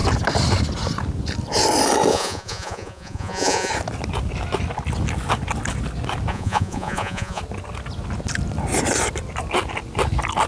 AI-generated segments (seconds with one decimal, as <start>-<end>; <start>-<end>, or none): 2.1-3.7; 6.3-7.4